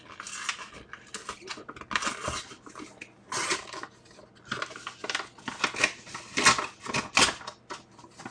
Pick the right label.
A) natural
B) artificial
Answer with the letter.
A